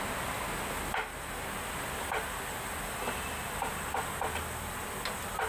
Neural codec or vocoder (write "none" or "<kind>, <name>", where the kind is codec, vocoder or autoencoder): none